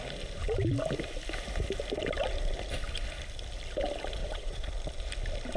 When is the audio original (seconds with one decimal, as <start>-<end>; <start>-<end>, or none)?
0.0-4.2; 4.7-5.6